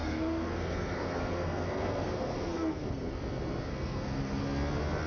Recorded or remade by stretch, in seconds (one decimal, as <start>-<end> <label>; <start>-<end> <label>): 0.0-3.1 remade; 3.1-3.7 recorded; 3.7-4.4 remade; 4.4-5.1 recorded